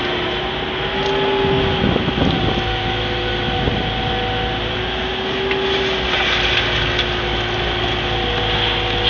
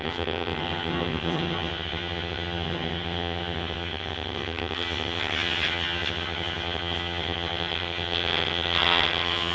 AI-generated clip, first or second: second